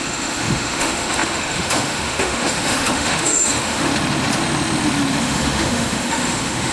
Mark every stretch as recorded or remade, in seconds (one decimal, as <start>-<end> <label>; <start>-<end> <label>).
0.0-3.9 remade; 3.9-5.2 recorded; 5.2-6.7 remade